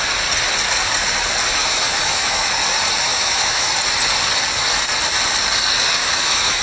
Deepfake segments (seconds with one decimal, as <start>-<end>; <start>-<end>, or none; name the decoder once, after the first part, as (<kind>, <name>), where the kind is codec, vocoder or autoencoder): 1.6-2.5 (autoencoder, DAC-VAE); 3.1-3.7; 6.0-6.6